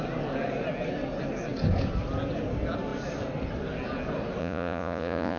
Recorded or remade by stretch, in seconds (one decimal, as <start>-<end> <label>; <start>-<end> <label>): 0.0-4.4 recorded; 4.4-5.4 remade